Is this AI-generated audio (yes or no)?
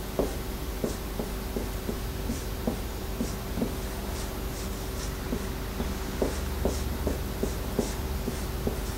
no